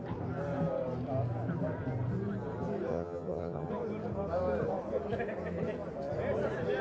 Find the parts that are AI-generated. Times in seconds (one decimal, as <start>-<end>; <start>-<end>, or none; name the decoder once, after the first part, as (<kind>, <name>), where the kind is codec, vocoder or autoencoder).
2.9-3.7 (vocoder, HiFi-GAN)